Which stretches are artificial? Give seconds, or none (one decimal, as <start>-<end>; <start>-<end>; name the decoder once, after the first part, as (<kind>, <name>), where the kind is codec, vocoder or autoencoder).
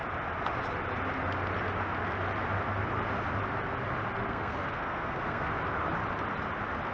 4.2-5.5 (codec, SNAC)